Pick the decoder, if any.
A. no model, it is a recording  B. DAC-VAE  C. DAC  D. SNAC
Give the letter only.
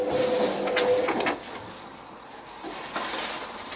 A